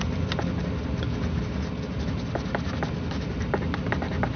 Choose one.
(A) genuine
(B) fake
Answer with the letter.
A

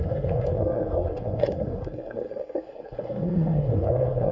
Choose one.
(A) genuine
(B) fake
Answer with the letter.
B